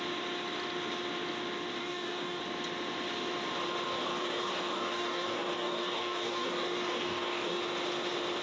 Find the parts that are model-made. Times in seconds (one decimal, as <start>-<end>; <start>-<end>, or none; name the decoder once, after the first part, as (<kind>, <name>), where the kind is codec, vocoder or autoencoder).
1.8-2.4 (codec, DAC); 3.9-7.6